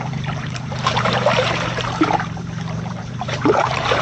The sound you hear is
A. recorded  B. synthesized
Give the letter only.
B